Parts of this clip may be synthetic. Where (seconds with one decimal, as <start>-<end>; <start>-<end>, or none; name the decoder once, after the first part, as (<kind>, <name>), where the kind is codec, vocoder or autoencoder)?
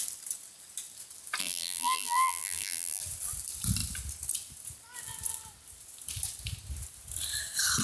1.4-3.0 (vocoder, BigVGAN v2)